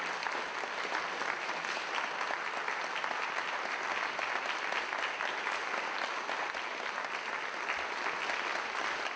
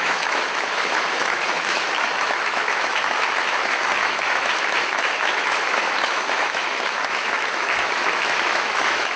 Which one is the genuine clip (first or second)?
first